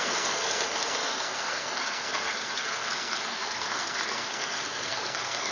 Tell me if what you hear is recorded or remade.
remade